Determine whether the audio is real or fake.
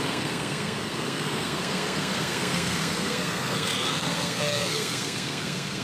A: fake